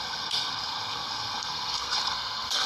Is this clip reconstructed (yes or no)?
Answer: yes